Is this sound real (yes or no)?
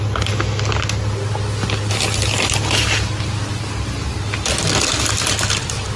yes